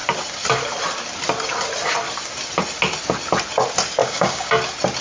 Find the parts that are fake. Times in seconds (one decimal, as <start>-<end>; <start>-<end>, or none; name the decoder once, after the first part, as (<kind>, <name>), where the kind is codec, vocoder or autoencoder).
4.0-4.5 (codec, DAC)